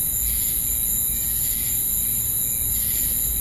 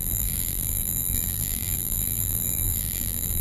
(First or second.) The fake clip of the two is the second